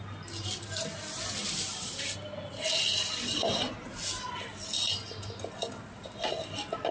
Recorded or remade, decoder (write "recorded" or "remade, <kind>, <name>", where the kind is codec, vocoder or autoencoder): recorded